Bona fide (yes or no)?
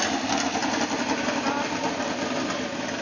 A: yes